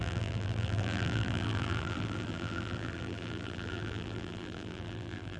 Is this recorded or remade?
remade